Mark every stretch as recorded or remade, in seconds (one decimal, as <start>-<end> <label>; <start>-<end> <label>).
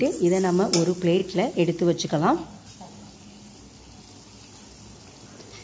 0.0-5.6 recorded